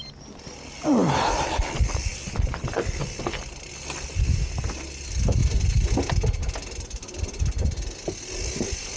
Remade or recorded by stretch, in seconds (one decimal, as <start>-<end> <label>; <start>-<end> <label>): 0.0-9.0 recorded